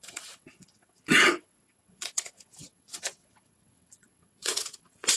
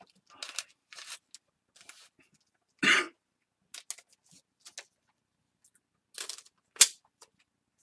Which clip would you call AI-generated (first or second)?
first